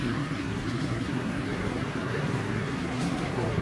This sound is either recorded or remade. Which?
remade